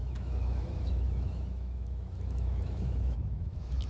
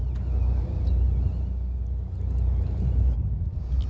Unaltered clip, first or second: second